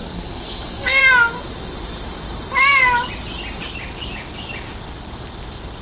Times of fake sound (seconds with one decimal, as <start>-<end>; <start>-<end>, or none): 0.0-1.0

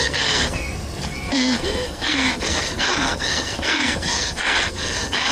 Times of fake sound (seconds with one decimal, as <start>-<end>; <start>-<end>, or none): 0.0-5.3

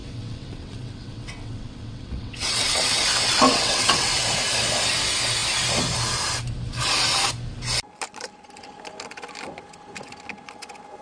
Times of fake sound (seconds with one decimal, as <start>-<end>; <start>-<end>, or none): 0.0-4.1

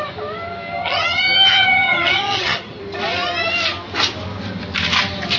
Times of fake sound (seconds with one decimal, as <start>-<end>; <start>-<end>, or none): 0.8-2.8

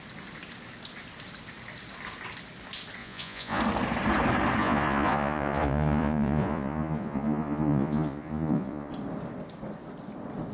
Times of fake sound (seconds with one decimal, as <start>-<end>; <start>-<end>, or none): 3.0-3.6; 4.6-8.9

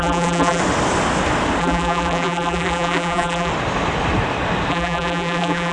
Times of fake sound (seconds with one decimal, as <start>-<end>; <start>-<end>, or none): 0.0-0.6; 1.6-3.5; 4.7-5.7

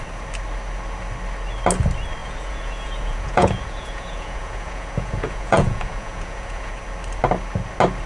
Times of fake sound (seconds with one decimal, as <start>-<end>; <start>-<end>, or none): 2.2-6.7

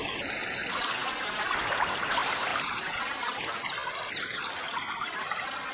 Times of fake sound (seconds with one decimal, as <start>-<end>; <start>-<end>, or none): 0.0-0.8; 2.5-3.5